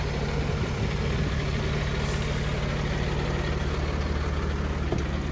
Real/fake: real